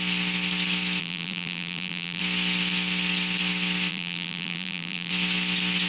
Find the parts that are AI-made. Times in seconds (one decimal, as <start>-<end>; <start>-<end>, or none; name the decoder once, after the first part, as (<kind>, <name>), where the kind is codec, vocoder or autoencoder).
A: 1.0-2.2 (vocoder, BigVGAN v2); 3.9-5.1